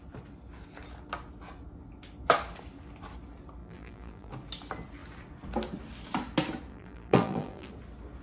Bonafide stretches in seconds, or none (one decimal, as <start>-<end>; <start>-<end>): 0.0-3.6; 4.3-6.7; 7.7-8.2

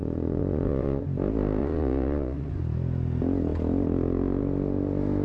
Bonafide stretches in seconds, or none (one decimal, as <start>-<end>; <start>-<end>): 1.0-1.6; 2.5-5.2

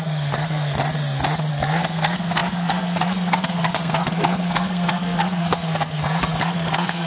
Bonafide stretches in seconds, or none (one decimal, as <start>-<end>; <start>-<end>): 0.8-1.5

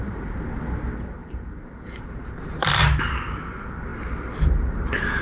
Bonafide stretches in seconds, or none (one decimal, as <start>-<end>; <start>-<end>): 0.6-1.2; 3.4-3.9

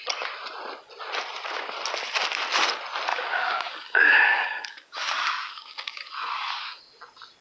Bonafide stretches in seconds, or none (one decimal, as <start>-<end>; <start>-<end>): 0.0-3.1; 6.8-7.4